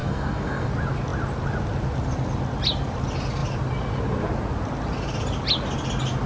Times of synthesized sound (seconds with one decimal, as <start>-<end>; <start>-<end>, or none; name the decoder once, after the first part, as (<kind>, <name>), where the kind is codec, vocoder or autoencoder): 0.0-0.7 (codec, SNAC)